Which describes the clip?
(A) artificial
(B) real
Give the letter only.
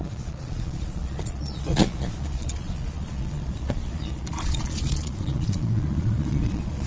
A